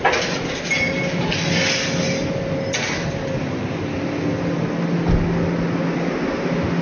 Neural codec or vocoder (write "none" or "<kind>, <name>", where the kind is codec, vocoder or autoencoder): none